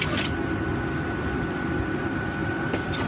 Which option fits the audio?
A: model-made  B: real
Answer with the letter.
B